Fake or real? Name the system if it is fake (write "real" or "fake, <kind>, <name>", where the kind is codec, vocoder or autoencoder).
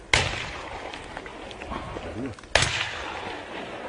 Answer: real